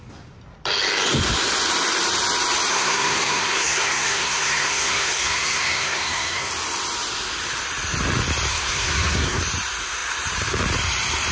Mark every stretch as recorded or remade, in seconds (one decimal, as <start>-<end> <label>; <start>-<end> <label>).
0.0-2.7 recorded; 2.7-6.5 remade; 6.5-8.5 recorded; 8.5-9.4 remade; 9.4-11.3 recorded